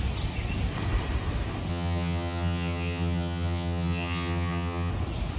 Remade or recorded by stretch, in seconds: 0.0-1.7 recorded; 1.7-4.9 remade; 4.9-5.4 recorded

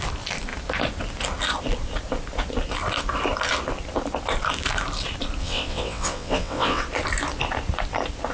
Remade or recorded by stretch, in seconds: 0.0-5.4 recorded; 5.4-6.8 remade; 6.8-8.3 recorded